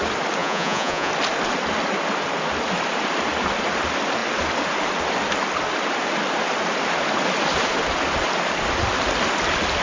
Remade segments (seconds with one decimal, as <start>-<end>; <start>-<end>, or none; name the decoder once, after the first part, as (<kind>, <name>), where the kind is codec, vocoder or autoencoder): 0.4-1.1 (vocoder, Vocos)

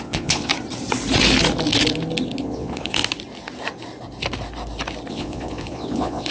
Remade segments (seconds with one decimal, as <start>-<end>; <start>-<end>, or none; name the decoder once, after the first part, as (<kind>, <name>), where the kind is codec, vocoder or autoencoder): 0.0-0.5 (vocoder, Vocos); 2.4-3.0; 5.1-6.3

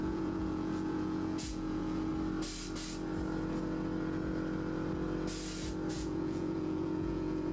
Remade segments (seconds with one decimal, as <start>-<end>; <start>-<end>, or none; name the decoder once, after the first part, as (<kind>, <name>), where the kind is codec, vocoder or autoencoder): 0.0-2.1 (vocoder, Vocos); 5.9-7.5

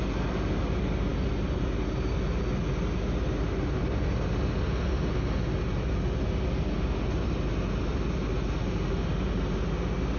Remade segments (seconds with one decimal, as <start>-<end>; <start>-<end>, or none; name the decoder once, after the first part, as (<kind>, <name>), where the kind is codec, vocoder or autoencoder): none

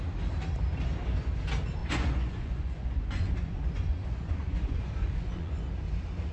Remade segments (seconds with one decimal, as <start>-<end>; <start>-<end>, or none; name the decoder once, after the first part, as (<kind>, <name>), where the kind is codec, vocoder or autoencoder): 1.8-5.6 (vocoder, Vocos)